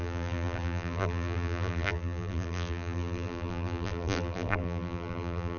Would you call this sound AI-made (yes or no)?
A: yes